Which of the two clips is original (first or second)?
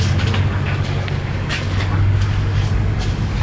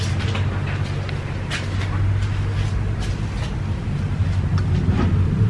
second